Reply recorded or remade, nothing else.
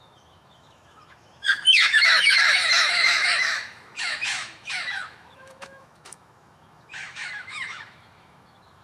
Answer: remade